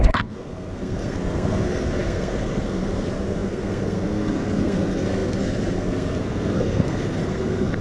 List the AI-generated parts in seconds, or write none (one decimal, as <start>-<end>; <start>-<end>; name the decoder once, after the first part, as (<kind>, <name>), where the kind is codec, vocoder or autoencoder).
0.0-7.8 (codec, SNAC)